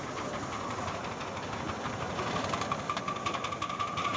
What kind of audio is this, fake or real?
real